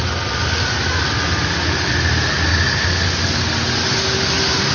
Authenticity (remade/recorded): recorded